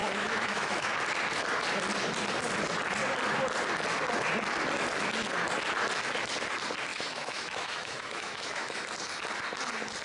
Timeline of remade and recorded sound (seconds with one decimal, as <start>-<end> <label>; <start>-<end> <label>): 0.0-0.9 remade; 0.9-6.9 recorded; 6.9-8.8 remade; 8.8-10.0 recorded